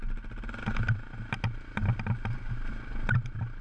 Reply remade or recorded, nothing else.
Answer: recorded